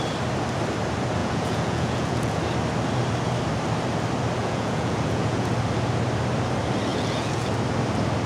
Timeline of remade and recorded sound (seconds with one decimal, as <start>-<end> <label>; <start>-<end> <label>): 0.0-1.2 recorded; 1.2-2.4 remade; 2.4-4.4 recorded; 4.4-5.5 remade; 5.5-6.9 recorded; 6.9-7.5 remade; 7.5-8.3 recorded